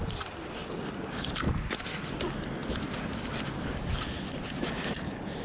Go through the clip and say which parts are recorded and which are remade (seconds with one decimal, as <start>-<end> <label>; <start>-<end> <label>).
0.0-0.6 recorded; 0.6-1.1 remade; 1.1-2.6 recorded; 2.6-4.3 remade; 4.3-5.4 recorded

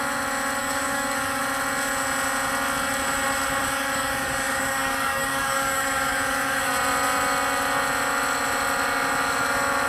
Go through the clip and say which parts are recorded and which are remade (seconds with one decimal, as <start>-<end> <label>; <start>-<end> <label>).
0.0-0.6 recorded; 0.6-1.4 remade; 1.4-3.6 recorded; 3.6-6.7 remade; 6.7-9.9 recorded